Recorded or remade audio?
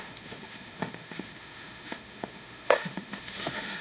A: remade